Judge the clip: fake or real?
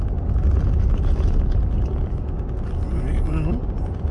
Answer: real